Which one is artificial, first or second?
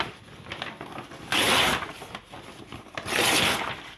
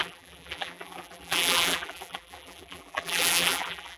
second